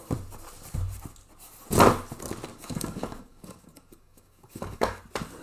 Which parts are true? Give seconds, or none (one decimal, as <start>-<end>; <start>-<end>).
0.0-2.5; 5.0-5.4